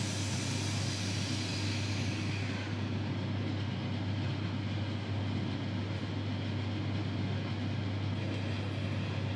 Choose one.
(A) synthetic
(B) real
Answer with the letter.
B